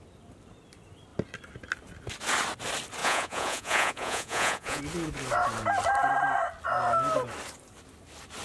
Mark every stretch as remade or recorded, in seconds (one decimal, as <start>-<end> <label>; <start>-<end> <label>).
0.0-3.0 recorded; 3.0-4.8 remade; 4.8-8.4 recorded